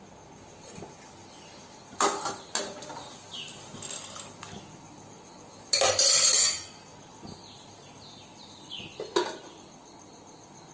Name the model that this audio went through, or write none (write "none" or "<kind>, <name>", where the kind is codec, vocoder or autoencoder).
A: none